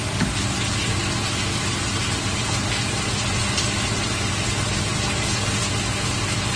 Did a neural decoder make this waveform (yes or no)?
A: no